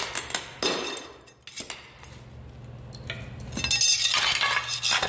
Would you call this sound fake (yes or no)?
no